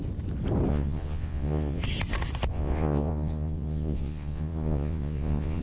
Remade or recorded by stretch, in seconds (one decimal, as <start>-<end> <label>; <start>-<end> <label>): 0.0-0.7 recorded; 0.7-1.8 remade; 1.8-2.5 recorded; 2.5-5.6 remade